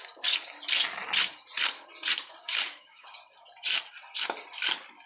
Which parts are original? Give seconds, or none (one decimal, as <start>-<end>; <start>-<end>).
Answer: 0.0-2.4; 3.2-5.1